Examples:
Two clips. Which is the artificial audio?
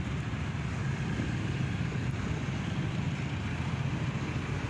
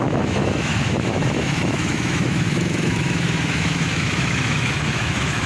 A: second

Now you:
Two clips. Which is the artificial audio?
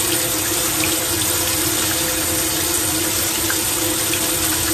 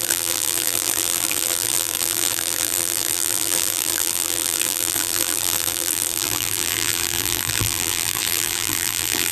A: second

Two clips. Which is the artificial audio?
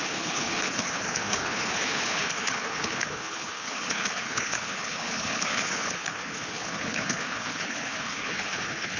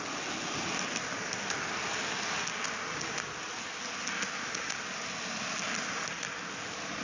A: first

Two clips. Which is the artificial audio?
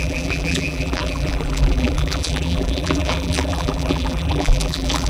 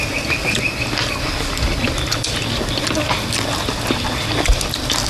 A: first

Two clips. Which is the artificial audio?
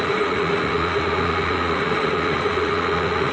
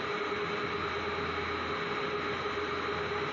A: first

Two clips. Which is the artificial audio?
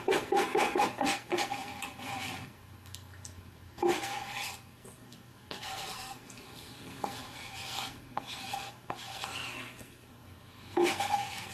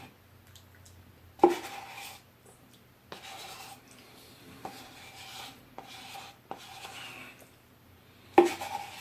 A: first